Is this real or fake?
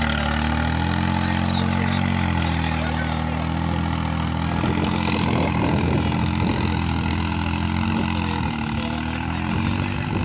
real